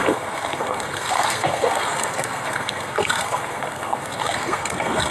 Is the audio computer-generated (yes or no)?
yes